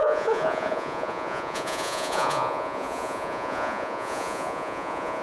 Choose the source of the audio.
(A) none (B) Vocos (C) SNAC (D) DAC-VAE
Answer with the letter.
B